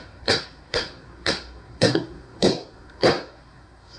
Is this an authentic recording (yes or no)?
no